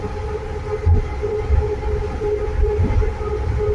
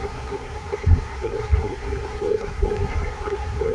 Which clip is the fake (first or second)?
second